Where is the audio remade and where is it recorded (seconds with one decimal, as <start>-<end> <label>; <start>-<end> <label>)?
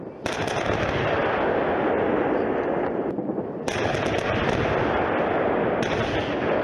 0.0-6.6 recorded